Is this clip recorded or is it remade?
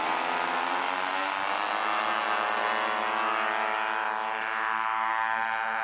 recorded